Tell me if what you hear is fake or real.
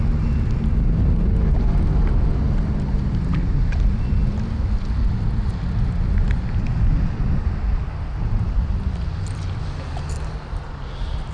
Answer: real